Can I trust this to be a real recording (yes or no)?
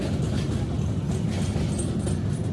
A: yes